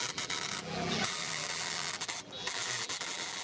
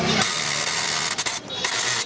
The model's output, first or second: first